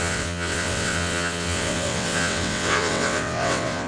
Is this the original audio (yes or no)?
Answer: no